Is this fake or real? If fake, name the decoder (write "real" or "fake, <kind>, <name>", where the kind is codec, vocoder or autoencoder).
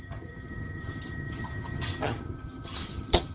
fake, vocoder, HiFi-GAN